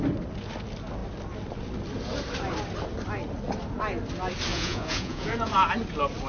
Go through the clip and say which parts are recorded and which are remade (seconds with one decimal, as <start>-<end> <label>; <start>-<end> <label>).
0.0-4.5 recorded; 4.5-5.5 remade; 5.5-6.3 recorded